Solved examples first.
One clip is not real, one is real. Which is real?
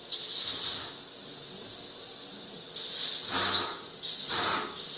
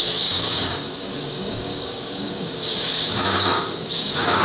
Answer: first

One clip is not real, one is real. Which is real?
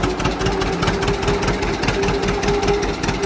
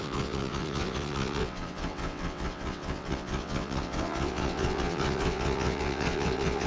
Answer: first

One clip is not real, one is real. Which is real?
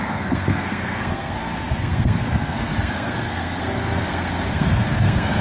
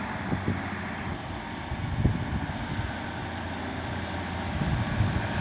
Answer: second